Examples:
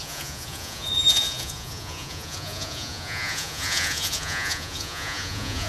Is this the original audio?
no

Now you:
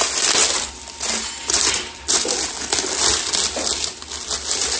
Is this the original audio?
yes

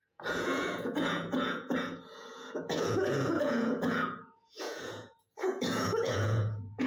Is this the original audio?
no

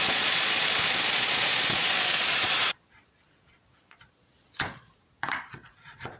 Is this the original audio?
no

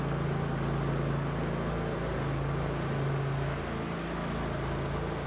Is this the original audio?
yes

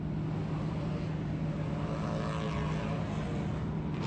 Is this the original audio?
yes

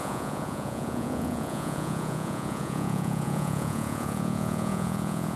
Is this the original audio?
no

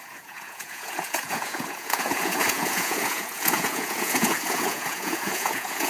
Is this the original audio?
no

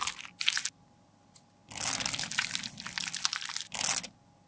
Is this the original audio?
yes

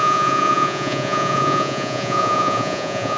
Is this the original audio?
no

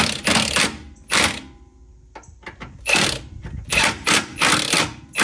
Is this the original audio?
yes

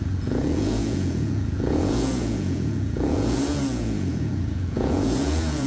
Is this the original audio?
no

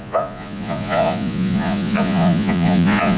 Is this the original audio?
no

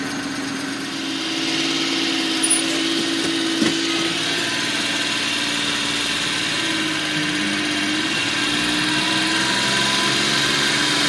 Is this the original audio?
yes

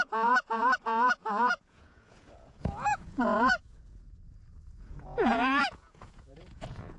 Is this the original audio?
no